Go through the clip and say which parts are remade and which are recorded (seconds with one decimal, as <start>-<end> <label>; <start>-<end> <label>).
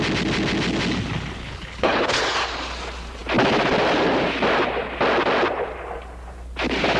0.0-1.4 recorded; 1.4-2.2 remade; 2.2-7.0 recorded